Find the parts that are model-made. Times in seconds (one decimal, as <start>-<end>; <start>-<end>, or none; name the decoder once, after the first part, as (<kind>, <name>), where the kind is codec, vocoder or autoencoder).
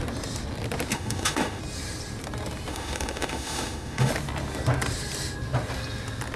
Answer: 0.9-1.6 (autoencoder, DAC-VAE); 2.7-4.1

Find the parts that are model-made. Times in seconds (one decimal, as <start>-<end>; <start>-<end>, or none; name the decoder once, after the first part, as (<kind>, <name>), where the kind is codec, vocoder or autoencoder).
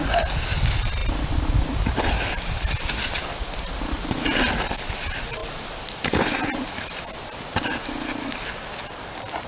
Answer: none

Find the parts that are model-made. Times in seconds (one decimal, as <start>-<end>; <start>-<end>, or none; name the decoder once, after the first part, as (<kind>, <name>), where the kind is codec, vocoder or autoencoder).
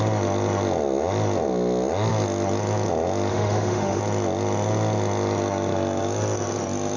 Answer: 3.3-4.0 (autoencoder, DAC-VAE)